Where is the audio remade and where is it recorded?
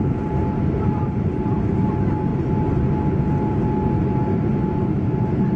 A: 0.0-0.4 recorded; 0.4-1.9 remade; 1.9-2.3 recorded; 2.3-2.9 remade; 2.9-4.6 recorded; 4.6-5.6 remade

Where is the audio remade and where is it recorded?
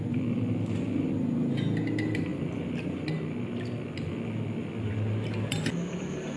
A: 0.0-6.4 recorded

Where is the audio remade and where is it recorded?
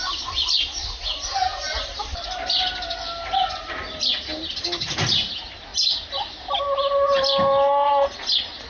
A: 0.0-8.7 recorded